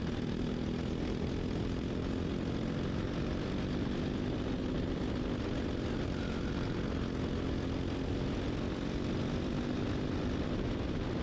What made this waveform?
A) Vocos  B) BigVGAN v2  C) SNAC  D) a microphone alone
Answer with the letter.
D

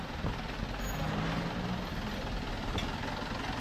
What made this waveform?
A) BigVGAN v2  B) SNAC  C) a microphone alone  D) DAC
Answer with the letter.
C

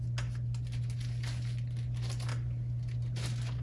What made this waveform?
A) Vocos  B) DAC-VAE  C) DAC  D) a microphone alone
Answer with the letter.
D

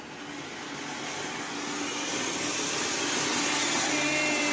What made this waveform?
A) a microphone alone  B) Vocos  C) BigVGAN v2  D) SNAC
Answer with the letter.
A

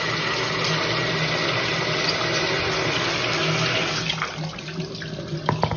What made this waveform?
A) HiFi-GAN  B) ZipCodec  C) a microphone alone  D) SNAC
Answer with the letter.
C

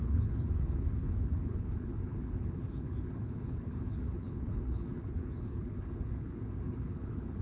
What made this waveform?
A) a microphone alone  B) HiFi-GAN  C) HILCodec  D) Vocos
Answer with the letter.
C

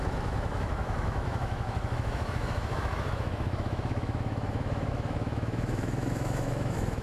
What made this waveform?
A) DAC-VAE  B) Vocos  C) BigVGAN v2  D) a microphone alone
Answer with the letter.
A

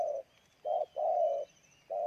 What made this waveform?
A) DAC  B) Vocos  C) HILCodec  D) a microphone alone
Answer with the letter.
D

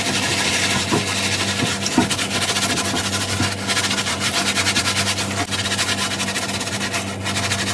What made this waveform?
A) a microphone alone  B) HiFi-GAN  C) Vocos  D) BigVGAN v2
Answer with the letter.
A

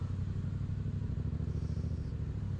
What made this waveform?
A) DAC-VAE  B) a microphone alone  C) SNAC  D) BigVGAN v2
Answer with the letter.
B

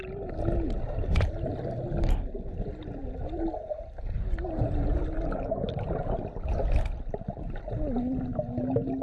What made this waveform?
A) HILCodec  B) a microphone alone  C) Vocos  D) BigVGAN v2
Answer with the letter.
B